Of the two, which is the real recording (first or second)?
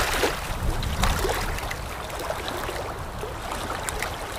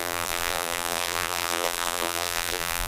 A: first